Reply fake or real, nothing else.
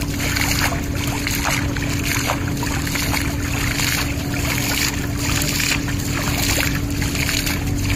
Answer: real